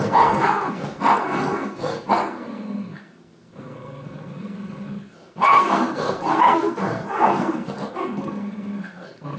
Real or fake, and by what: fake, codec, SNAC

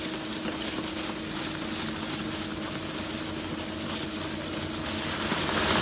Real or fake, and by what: real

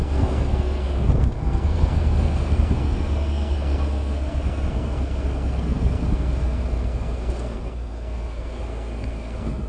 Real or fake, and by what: fake, codec, SNAC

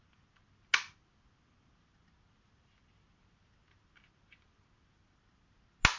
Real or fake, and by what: real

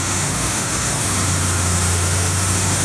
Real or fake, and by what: fake, autoencoder, DAC-VAE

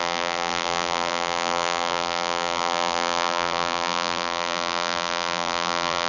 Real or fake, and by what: fake, vocoder, BigVGAN v2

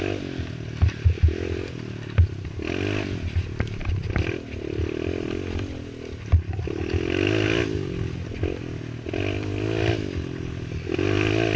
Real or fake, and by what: real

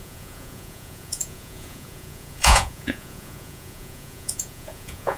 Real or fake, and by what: fake, vocoder, Vocos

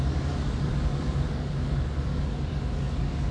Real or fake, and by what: fake, codec, DAC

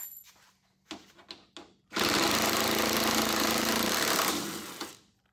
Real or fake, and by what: real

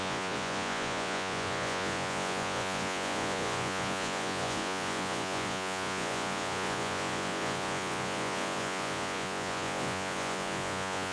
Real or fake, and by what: fake, vocoder, Vocos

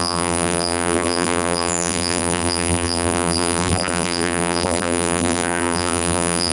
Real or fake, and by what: fake, vocoder, BigVGAN v2